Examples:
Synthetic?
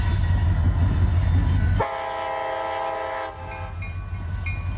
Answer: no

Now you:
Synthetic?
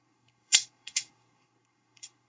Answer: yes